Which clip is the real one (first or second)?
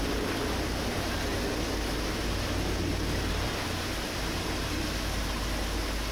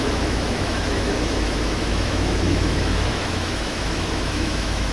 first